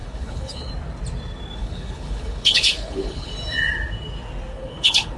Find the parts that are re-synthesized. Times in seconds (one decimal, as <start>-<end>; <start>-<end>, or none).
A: 0.0-0.7; 1.6-3.3; 4.5-5.2